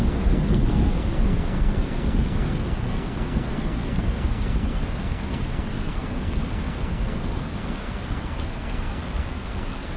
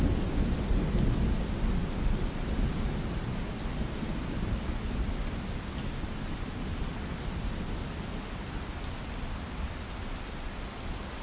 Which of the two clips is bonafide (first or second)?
second